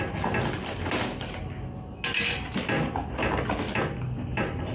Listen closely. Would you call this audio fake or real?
real